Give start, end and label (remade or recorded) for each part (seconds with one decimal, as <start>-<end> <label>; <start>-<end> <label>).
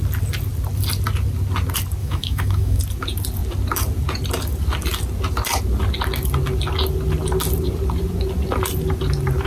0.0-2.0 recorded; 2.0-2.8 remade; 2.8-9.5 recorded